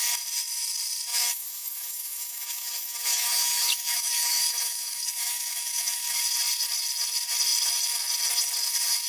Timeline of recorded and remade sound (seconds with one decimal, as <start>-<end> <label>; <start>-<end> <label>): 0.0-1.1 recorded; 1.1-6.2 remade; 6.2-9.1 recorded